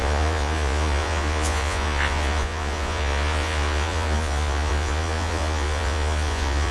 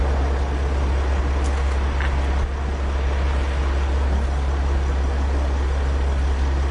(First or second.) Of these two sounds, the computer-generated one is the first